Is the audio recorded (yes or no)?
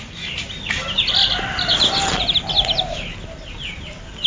yes